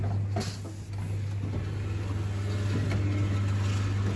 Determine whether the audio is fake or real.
real